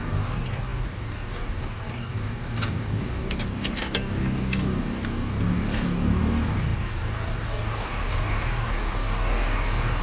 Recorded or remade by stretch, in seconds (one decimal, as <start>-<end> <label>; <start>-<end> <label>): 0.0-10.0 remade